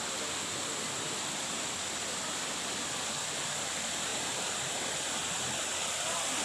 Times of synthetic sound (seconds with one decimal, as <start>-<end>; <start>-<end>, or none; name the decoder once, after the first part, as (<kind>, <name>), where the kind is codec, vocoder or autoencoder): 4.1-5.0 (vocoder, BigVGAN v2)